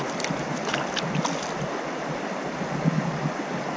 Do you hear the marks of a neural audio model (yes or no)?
no